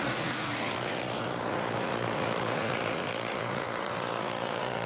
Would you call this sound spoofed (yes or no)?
yes